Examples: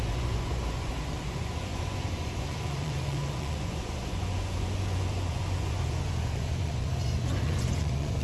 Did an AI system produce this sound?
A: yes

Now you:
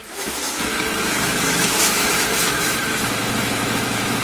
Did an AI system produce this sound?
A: yes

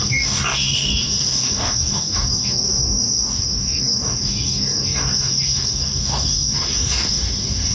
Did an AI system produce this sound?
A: yes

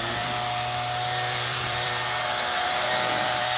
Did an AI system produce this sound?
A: yes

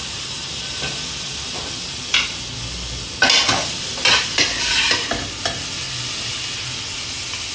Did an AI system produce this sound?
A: no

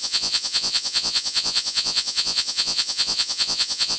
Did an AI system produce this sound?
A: yes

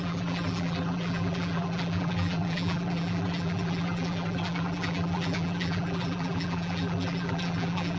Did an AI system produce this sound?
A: yes